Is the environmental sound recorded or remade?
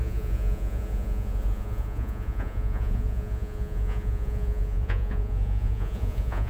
remade